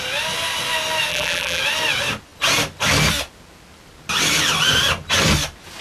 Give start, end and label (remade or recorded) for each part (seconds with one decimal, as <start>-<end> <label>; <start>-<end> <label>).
0.0-1.1 recorded; 1.1-1.6 remade; 1.6-5.8 recorded